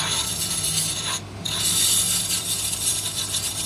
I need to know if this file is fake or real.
fake